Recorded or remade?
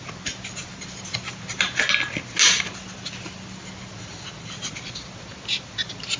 recorded